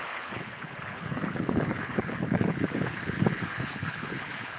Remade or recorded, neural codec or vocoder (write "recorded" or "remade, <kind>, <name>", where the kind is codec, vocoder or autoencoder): remade, codec, HILCodec